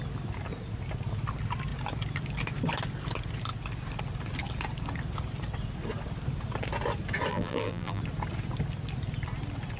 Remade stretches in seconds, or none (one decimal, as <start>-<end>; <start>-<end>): 7.3-8.0